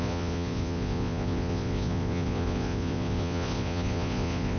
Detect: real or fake fake